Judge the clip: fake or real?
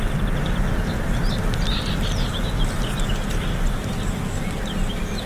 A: real